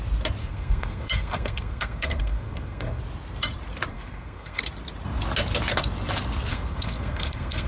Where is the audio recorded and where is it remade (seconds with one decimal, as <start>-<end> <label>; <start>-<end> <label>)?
0.0-0.4 recorded; 0.4-3.0 remade; 3.0-3.9 recorded; 3.9-4.6 remade; 4.6-6.5 recorded; 6.5-7.7 remade